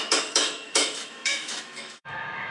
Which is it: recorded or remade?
remade